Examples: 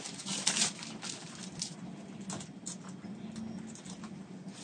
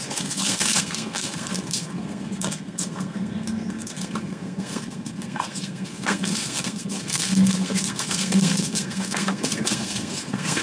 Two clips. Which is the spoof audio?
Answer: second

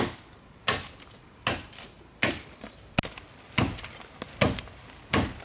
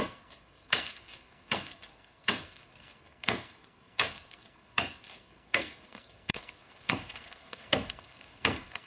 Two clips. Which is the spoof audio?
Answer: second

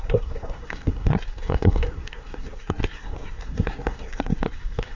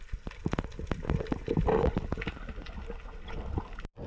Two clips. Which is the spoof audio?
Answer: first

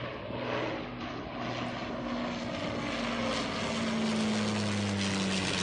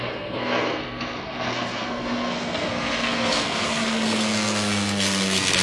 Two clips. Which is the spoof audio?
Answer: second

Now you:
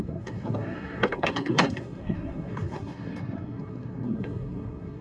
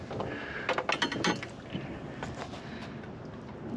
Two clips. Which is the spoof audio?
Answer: first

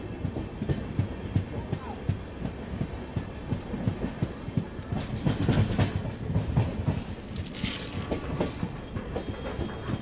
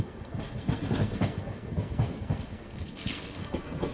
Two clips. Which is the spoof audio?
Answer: second